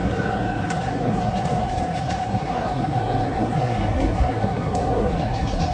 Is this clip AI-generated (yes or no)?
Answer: yes